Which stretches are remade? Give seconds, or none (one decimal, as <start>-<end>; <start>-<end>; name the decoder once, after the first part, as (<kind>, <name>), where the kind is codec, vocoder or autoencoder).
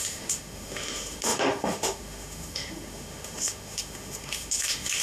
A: 0.0-5.0 (autoencoder, DAC-VAE)